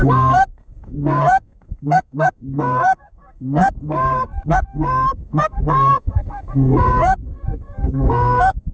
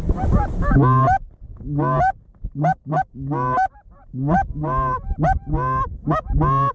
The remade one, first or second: first